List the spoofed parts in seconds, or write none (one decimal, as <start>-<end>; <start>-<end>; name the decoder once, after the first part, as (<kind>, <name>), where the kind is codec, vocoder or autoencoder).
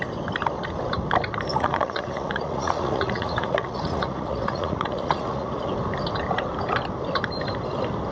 1.5-5.7 (vocoder, Vocos)